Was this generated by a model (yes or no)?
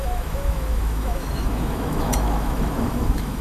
yes